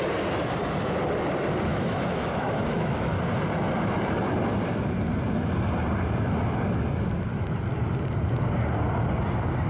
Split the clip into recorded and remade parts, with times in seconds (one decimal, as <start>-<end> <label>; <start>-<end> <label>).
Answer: 0.0-1.7 recorded; 1.7-3.2 remade; 3.2-9.7 recorded